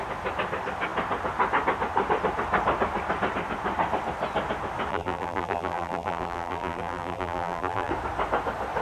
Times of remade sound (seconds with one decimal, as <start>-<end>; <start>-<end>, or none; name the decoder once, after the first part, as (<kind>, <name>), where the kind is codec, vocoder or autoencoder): 4.9-7.9 (vocoder, BigVGAN v2)